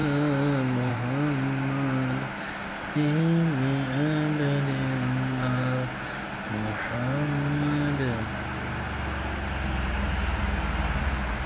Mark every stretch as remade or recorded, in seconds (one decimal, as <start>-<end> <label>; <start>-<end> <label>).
0.0-11.5 recorded